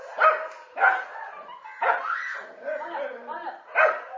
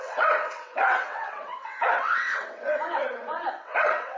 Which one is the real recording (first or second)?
first